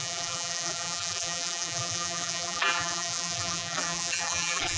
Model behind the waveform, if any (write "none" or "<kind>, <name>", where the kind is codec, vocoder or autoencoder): vocoder, BigVGAN v2